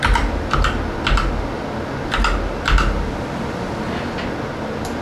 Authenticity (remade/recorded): recorded